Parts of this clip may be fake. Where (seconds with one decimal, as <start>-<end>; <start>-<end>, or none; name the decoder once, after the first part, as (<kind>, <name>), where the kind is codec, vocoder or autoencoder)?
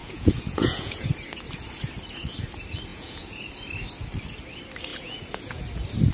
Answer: 0.0-1.1 (vocoder, Vocos); 2.9-3.5; 4.9-5.6